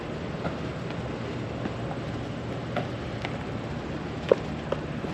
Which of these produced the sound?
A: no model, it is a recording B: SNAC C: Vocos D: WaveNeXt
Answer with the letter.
A